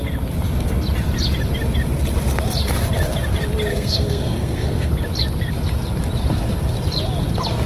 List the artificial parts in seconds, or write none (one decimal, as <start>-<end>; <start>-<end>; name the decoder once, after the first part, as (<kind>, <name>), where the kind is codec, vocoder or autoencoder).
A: 3.7-4.9 (codec, SNAC)